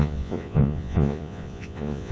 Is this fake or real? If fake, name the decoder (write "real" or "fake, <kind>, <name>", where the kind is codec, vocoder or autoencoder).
fake, vocoder, Vocos